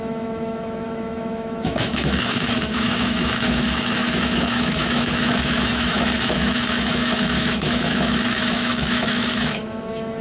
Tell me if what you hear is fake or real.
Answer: fake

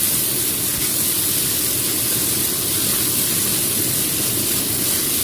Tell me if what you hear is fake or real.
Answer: real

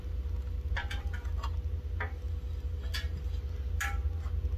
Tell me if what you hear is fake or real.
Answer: real